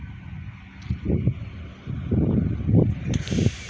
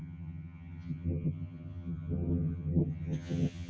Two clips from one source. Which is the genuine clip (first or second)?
first